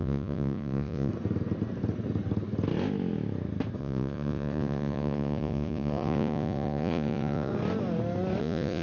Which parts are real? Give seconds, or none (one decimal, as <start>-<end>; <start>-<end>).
1.1-3.8; 7.5-8.4